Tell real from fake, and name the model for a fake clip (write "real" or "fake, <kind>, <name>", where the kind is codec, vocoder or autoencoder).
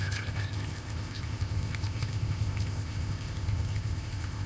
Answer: fake, codec, ZipCodec